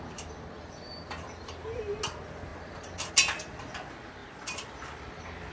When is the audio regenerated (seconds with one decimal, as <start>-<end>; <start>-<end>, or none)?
4.2-5.1